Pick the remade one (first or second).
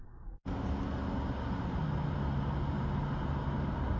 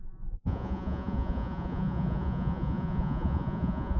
second